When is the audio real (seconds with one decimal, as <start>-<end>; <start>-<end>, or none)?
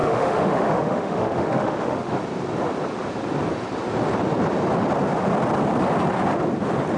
2.2-7.0